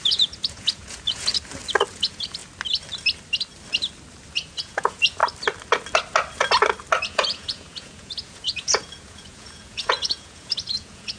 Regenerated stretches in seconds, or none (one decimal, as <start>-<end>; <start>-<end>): 0.0-1.3; 1.9-2.4; 4.3-5.2; 7.0-11.2